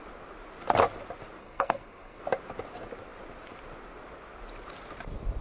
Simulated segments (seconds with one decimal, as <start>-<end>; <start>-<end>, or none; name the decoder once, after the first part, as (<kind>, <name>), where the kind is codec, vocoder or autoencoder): 1.4-2.2 (codec, SNAC)